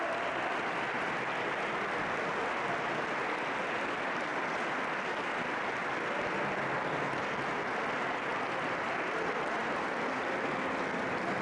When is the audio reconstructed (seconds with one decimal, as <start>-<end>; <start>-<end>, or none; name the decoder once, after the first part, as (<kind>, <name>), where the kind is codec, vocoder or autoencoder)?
none

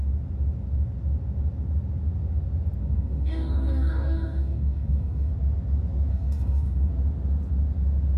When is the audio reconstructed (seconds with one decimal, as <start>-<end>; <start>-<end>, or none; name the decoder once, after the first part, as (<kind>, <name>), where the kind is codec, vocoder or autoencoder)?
2.8-5.3 (codec, DAC); 6.1-6.9